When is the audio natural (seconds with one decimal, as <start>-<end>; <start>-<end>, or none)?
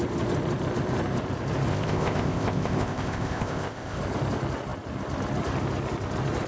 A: 0.0-1.7; 4.0-6.5